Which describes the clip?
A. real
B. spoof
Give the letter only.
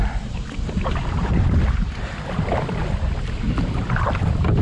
B